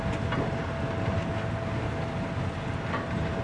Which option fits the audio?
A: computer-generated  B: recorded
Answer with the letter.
B